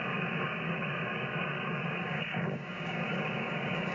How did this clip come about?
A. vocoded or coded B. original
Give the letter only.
A